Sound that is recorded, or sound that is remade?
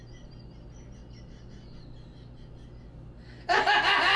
recorded